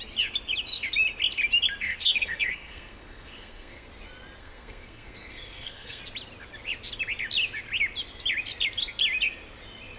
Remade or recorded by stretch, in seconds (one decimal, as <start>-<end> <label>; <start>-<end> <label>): 0.0-1.8 recorded; 1.8-3.9 remade; 3.9-4.4 recorded; 4.4-6.0 remade; 6.0-10.0 recorded